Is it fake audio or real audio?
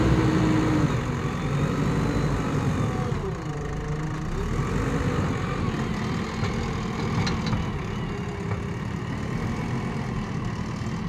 real